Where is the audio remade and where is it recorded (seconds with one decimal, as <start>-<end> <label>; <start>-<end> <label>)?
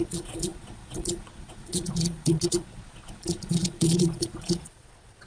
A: 0.0-5.3 remade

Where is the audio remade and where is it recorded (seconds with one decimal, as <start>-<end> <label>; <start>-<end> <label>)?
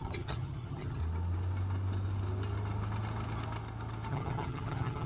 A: 0.0-1.0 remade; 1.0-4.1 recorded; 4.1-5.1 remade